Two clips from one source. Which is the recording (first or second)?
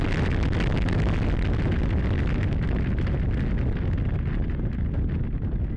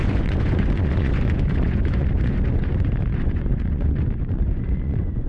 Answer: first